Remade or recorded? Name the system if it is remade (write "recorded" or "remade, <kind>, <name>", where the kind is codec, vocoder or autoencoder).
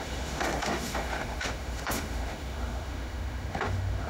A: remade, autoencoder, DAC-VAE